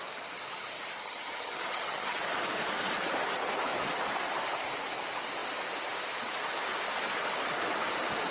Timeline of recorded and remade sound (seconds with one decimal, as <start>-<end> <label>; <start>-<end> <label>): 0.0-1.0 recorded; 1.0-2.2 remade; 2.2-8.3 recorded